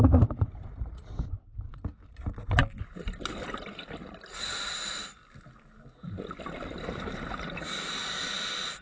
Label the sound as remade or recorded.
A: recorded